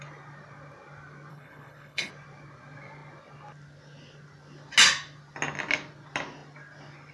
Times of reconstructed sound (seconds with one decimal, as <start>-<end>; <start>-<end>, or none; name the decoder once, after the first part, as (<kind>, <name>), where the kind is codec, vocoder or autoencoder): 1.3-2.1 (codec, HILCodec)